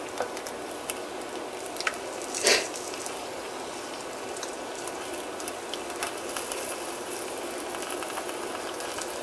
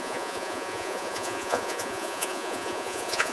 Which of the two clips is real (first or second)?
first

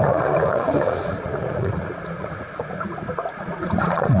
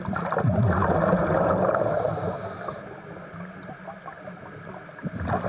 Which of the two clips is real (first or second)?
second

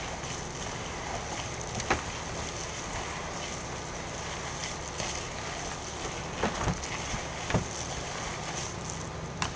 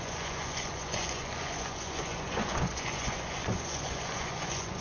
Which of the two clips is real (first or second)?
first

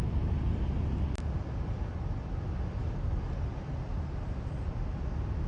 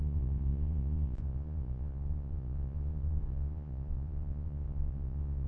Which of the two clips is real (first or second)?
first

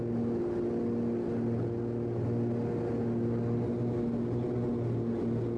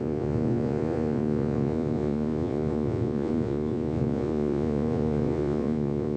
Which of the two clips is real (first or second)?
first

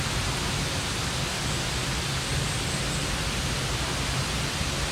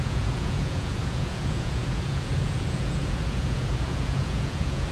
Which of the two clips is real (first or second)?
first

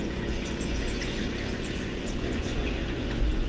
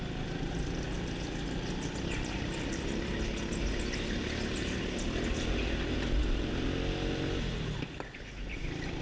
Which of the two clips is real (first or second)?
second